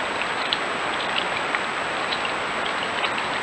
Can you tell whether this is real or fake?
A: real